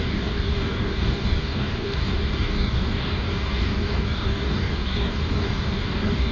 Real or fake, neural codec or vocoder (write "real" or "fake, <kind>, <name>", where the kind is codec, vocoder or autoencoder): fake, codec, DAC